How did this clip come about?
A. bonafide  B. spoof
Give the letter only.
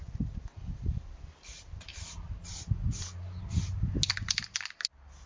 A